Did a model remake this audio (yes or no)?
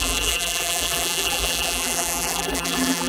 yes